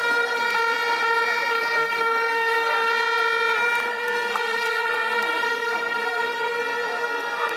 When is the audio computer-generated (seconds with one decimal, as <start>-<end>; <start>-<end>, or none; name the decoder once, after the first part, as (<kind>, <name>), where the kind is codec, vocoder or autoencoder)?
1.5-2.9 (codec, SNAC); 3.9-7.6